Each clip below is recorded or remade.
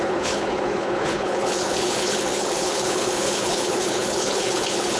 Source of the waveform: remade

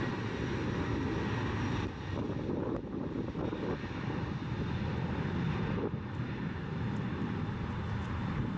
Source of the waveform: recorded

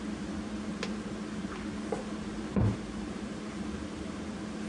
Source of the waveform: recorded